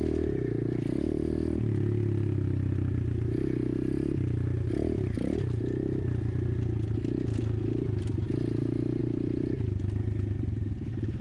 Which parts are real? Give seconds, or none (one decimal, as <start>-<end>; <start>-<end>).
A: 0.0-9.0